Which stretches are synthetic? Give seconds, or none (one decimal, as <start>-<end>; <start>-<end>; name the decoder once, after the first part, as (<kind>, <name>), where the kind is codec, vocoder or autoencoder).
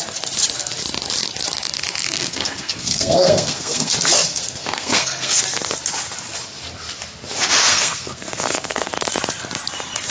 2.0-3.9 (codec, SNAC); 4.3-5.4; 7.7-8.9